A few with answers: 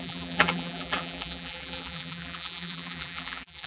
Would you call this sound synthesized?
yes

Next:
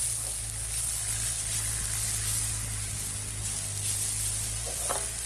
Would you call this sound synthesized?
no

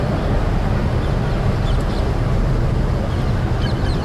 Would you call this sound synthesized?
no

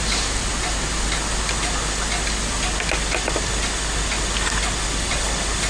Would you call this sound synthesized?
no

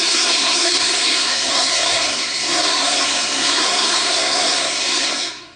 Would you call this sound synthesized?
yes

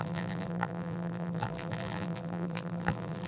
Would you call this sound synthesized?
yes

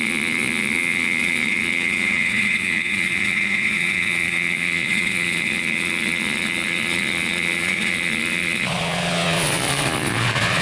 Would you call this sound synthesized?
yes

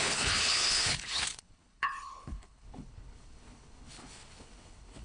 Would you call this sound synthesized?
yes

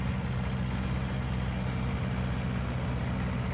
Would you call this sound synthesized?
no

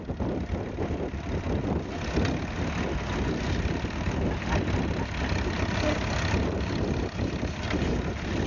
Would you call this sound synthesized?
no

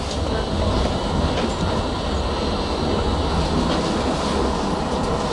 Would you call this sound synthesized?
no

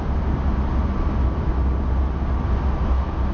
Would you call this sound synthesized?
no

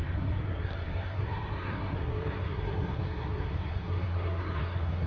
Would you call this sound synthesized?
yes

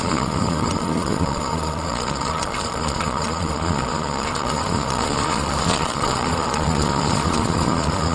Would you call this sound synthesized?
yes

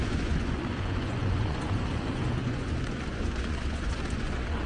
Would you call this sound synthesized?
yes